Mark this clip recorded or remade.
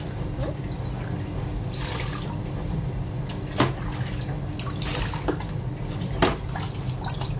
recorded